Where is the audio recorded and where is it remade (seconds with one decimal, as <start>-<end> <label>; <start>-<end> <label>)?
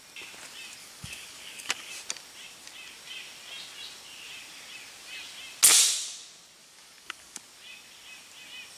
0.0-0.8 recorded; 0.8-1.9 remade; 1.9-6.6 recorded; 6.6-7.4 remade; 7.4-8.8 recorded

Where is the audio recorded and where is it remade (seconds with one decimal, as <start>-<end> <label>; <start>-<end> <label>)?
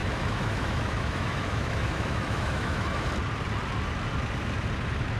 0.0-3.1 remade; 3.1-5.2 recorded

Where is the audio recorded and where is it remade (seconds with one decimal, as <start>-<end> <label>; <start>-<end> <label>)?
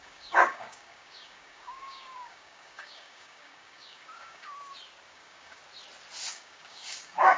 0.0-4.5 remade; 4.5-5.1 recorded; 5.1-5.6 remade; 5.6-6.3 recorded; 6.3-7.4 remade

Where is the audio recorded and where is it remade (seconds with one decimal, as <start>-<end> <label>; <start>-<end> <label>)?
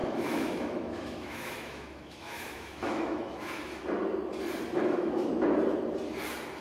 0.0-3.8 remade; 3.8-4.8 recorded; 4.8-5.3 remade; 5.3-6.6 recorded